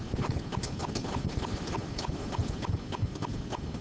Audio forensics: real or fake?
real